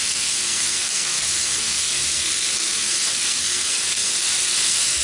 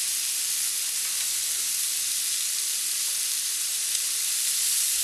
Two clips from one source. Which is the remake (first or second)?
first